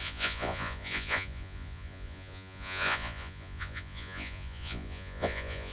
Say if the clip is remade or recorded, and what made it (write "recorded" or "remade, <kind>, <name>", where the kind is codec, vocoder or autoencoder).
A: remade, vocoder, Vocos